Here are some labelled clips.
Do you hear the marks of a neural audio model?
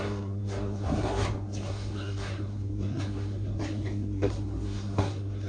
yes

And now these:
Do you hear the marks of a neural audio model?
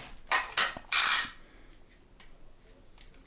no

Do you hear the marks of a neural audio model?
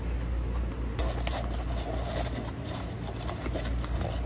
no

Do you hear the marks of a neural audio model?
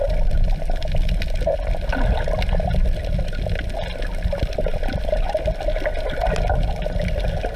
no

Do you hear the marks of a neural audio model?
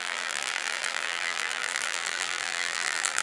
yes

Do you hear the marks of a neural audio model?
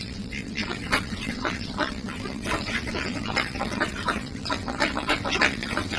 yes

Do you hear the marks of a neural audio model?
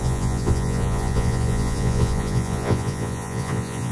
yes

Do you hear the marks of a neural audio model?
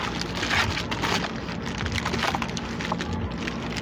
no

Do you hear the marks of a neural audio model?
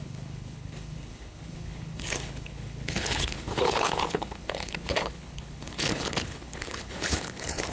yes